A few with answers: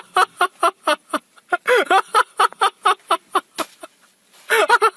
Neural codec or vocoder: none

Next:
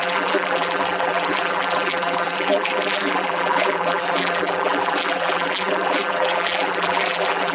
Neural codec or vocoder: vocoder, BigVGAN v2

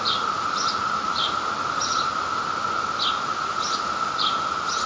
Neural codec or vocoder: none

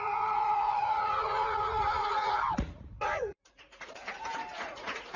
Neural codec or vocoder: vocoder, Vocos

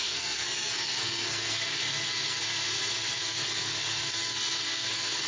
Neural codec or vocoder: codec, SNAC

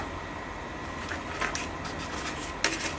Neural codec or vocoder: none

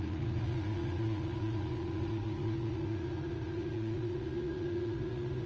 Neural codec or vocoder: vocoder, Vocos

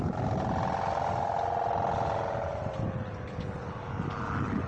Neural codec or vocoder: none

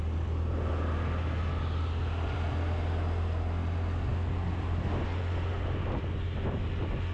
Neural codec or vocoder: none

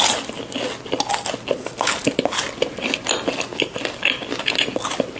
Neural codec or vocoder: none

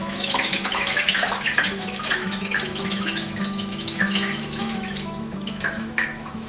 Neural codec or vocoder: autoencoder, DAC-VAE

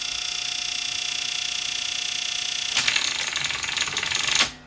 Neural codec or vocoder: none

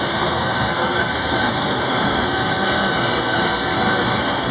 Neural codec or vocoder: codec, SNAC